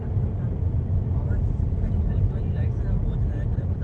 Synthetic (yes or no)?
no